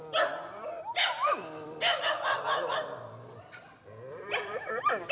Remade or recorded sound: recorded